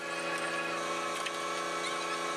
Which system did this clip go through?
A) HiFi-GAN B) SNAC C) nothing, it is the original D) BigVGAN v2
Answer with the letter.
C